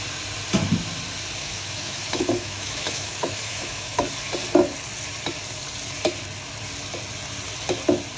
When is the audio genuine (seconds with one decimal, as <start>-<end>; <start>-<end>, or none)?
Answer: 0.0-1.4; 4.0-8.2